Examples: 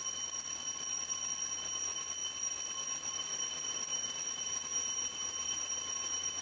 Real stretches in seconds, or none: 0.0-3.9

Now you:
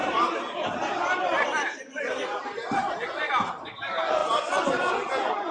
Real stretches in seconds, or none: 3.3-5.5

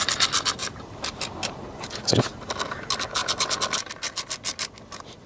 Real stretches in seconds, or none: 0.0-0.6; 1.2-5.3

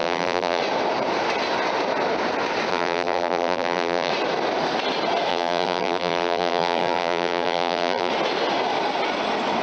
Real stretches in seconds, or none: 0.6-2.7; 4.1-5.3; 8.1-9.6

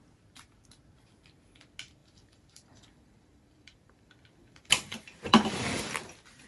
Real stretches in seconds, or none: 0.0-2.0; 5.9-6.5

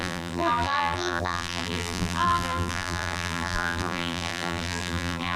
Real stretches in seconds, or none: none